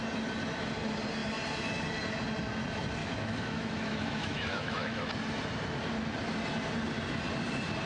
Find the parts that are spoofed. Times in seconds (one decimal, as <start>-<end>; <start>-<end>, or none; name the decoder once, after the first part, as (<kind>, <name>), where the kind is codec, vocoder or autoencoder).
3.0-5.1 (autoencoder, DAC-VAE)